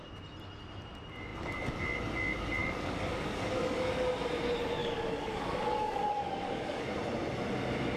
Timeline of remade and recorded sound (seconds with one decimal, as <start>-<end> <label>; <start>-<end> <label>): 0.0-2.6 recorded; 2.6-3.9 remade; 3.9-4.8 recorded; 4.8-6.9 remade; 6.9-8.0 recorded